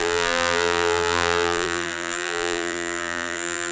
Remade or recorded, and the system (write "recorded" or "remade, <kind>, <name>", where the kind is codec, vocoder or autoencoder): remade, vocoder, BigVGAN v2